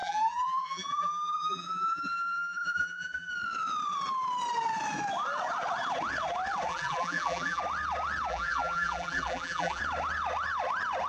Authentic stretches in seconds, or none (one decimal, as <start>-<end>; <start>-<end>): 3.3-6.7; 7.6-8.3; 9.8-11.1